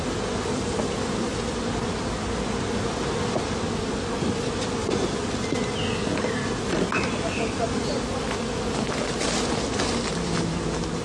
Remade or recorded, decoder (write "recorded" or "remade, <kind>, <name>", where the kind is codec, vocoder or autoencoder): recorded